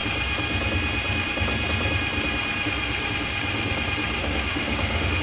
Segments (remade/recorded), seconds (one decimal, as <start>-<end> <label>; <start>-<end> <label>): 0.0-4.2 recorded; 4.2-5.2 remade